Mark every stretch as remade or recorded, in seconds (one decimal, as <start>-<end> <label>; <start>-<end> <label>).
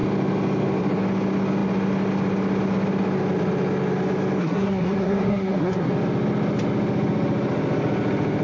0.0-4.4 recorded; 4.4-5.9 remade; 5.9-8.4 recorded